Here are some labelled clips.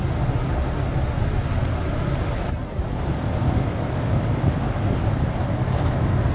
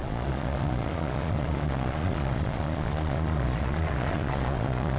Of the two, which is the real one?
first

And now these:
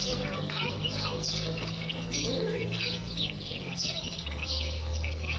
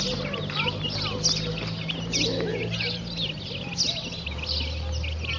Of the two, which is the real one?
second